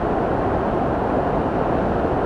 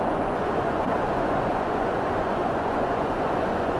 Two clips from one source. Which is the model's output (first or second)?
second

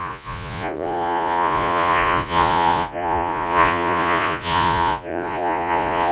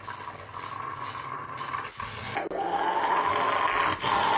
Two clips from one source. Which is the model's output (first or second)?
first